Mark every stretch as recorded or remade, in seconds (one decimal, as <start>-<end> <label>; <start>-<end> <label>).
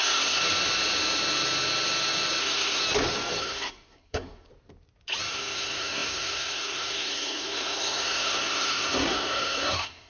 0.0-0.4 remade; 0.4-2.4 recorded; 2.4-2.8 remade; 2.8-3.4 recorded; 3.4-4.5 remade; 4.5-5.3 recorded; 5.3-10.1 remade